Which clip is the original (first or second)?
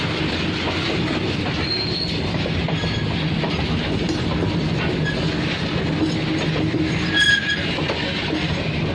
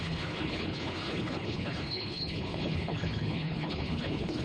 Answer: first